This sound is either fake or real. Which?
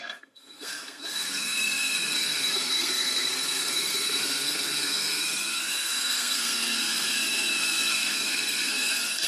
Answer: fake